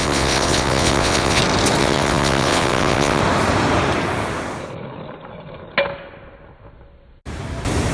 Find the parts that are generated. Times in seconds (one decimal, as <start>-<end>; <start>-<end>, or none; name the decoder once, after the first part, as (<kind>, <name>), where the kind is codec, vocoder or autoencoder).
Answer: 0.0-1.4 (vocoder, WaveNeXt); 1.8-3.2